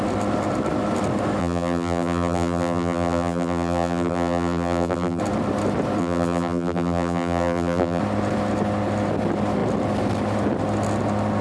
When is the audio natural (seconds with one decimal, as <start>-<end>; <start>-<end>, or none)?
0.0-1.4; 5.2-6.0; 8.0-11.4